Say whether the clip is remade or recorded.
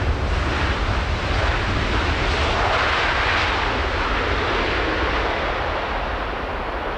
recorded